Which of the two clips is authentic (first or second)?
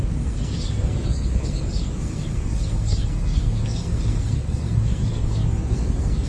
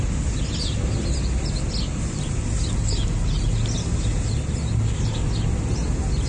second